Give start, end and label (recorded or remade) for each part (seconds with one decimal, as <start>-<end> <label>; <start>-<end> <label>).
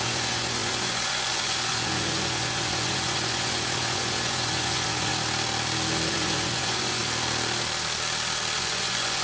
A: 0.0-5.1 remade; 5.1-6.1 recorded; 6.1-7.0 remade; 7.0-8.6 recorded; 8.6-9.2 remade